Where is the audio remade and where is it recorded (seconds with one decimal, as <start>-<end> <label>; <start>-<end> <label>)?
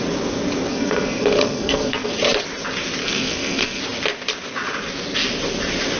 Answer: 0.0-0.7 recorded; 0.7-2.1 remade; 2.1-3.0 recorded; 3.0-3.8 remade; 3.8-6.0 recorded